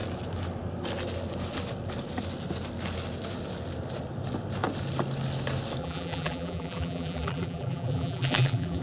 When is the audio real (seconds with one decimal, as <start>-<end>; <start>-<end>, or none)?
0.0-5.8